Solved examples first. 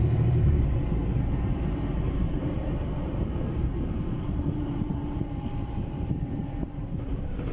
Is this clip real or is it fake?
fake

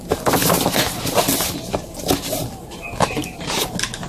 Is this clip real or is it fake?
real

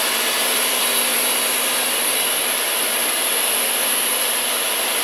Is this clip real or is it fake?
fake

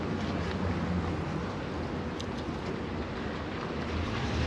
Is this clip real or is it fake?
real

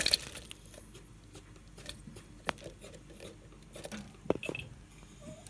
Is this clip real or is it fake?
real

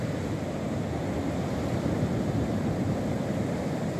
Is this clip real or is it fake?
fake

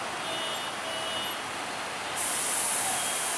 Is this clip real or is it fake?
real